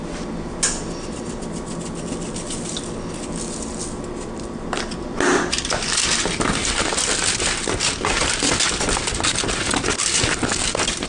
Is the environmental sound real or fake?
real